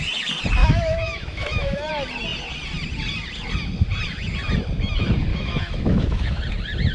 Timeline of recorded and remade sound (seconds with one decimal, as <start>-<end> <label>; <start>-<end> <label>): 0.0-0.6 recorded; 0.6-1.9 remade; 1.9-5.3 recorded; 5.3-6.4 remade; 6.4-6.9 recorded